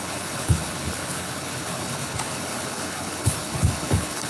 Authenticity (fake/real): fake